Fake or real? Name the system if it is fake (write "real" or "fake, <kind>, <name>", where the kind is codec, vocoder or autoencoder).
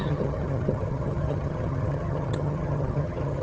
fake, vocoder, HiFi-GAN